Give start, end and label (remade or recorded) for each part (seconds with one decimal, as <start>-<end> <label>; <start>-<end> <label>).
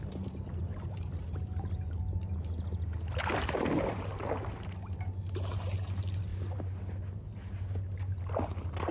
0.0-8.9 recorded